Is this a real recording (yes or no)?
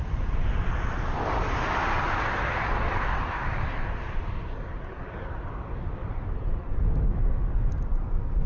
yes